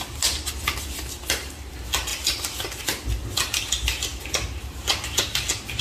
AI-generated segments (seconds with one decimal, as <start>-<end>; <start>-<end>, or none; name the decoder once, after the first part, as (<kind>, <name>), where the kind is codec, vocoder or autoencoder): none